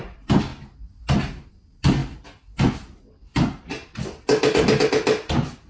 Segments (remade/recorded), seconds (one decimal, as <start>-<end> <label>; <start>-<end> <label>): 0.0-5.7 recorded